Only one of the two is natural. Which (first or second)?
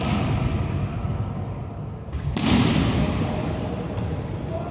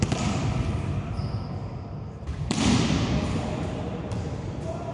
first